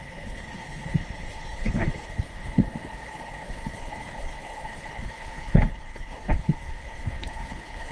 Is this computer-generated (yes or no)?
yes